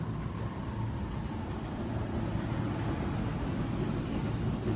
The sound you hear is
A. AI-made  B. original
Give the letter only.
B